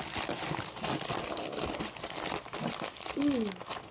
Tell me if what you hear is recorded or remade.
recorded